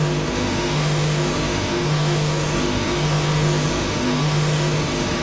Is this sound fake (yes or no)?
yes